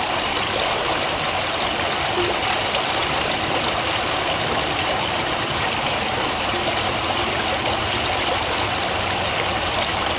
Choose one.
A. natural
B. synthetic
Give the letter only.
B